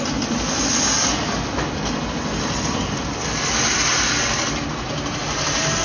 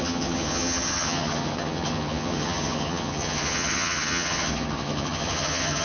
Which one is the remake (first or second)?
second